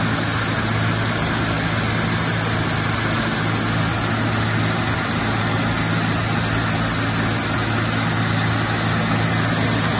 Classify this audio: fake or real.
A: real